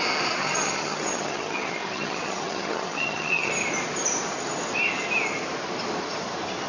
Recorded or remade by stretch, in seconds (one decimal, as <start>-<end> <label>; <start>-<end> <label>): 0.0-0.4 recorded; 0.4-3.5 remade; 3.5-6.7 recorded